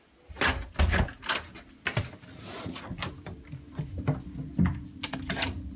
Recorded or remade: recorded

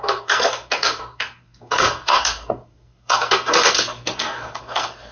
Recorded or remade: remade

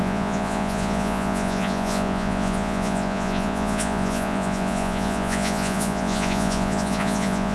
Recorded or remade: remade